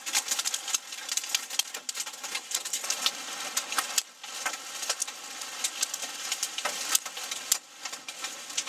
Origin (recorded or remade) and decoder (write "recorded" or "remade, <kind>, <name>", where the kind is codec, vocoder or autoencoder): recorded